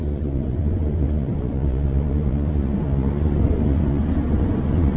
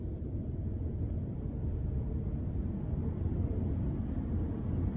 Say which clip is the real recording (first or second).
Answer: second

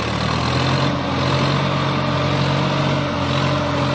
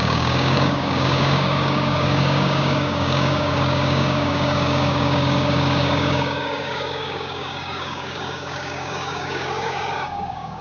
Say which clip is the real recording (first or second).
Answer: first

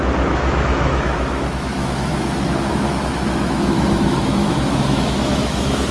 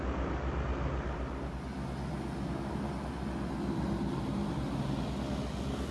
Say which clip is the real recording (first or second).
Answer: second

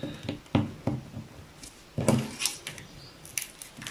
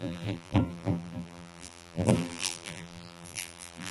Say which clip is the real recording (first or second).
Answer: first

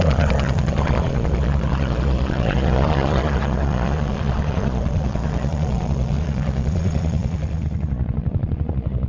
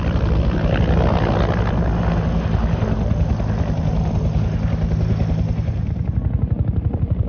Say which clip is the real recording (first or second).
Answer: second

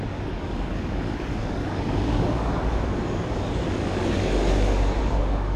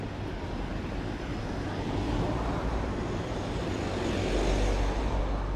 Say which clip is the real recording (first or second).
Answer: second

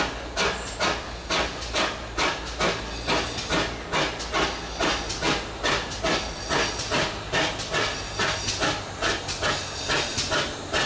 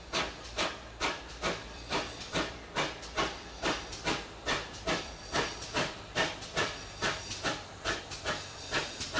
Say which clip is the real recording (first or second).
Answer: first